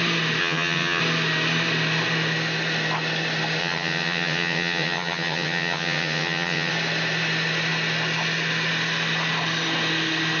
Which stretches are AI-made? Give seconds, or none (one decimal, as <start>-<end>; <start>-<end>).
0.4-1.0; 3.6-6.7